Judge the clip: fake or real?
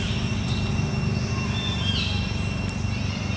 real